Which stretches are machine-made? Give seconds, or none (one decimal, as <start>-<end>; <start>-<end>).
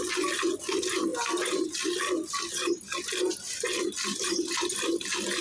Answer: none